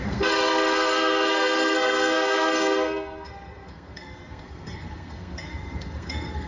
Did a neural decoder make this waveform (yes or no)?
yes